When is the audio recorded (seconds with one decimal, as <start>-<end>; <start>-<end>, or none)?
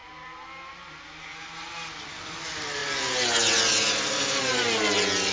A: 0.0-5.3